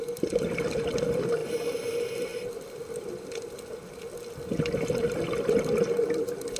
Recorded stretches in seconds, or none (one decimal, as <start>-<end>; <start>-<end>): 0.0-6.6